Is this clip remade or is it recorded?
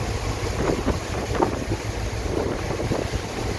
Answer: recorded